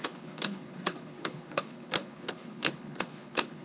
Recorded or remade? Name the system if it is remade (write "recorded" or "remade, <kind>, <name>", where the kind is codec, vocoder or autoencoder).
remade, codec, HILCodec